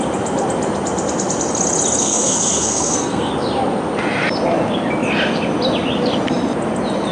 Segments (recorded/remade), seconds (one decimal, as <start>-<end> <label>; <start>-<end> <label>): 0.0-2.0 recorded; 2.0-3.3 remade; 3.3-7.1 recorded